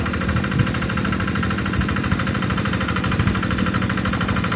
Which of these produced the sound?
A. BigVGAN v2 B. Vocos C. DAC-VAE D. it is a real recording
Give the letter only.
A